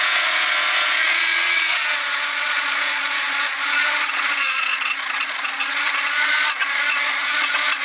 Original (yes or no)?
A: no